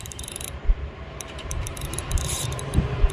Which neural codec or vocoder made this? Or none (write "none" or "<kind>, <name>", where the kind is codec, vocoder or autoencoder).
vocoder, BigVGAN v2